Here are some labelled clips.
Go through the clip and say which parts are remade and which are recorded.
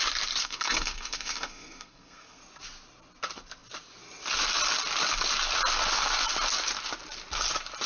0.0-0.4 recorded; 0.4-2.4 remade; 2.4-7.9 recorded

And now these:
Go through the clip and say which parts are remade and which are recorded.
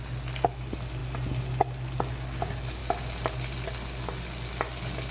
0.0-5.1 recorded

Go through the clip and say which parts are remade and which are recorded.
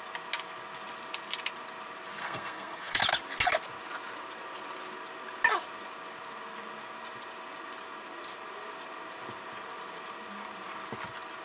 0.0-2.2 recorded; 2.2-3.0 remade; 3.0-11.4 recorded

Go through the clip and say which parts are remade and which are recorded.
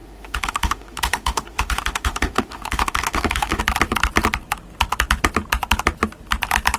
0.0-3.6 remade; 3.6-6.8 recorded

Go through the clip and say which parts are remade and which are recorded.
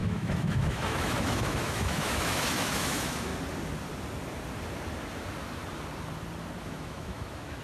0.0-3.3 remade; 3.3-6.6 recorded; 6.6-7.6 remade